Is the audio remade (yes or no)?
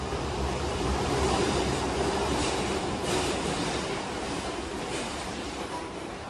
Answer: yes